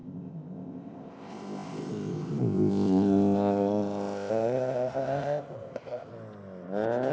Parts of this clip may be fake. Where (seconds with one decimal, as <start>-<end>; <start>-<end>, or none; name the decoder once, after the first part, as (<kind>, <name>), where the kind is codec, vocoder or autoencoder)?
0.0-6.1 (codec, ZipCodec)